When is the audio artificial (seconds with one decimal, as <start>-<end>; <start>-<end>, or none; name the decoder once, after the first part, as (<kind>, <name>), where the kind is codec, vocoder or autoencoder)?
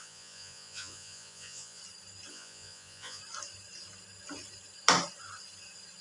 0.0-1.8 (vocoder, Vocos); 2.3-3.2